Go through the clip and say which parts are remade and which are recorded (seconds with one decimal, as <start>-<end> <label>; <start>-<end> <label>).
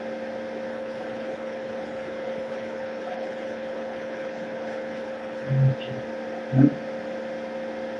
0.0-0.7 recorded; 0.7-5.5 remade; 5.5-8.0 recorded